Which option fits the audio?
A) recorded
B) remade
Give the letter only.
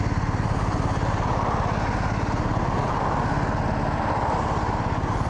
A